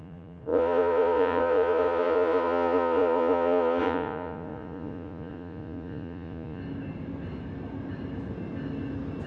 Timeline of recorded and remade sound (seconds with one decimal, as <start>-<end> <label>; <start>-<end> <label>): 0.0-6.6 remade; 6.6-9.3 recorded